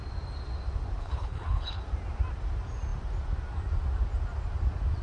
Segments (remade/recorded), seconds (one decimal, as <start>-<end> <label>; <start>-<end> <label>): 0.0-1.0 recorded; 1.0-1.8 remade; 1.8-5.0 recorded